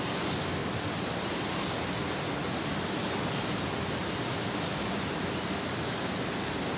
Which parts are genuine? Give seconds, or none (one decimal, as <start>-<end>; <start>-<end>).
0.0-6.8